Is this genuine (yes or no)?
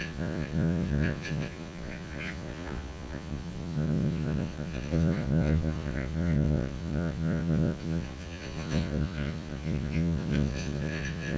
no